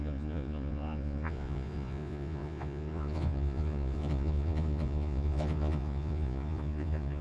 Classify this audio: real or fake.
fake